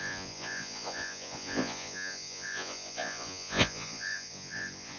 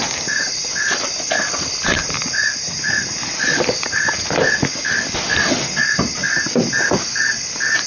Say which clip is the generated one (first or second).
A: first